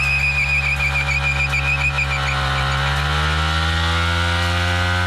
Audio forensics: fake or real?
real